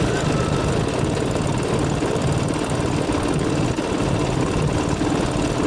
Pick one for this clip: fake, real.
real